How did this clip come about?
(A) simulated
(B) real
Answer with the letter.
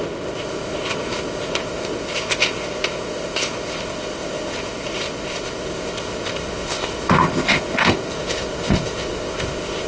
A